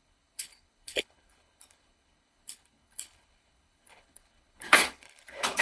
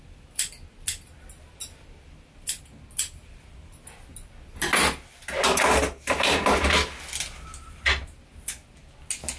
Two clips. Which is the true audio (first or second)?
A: second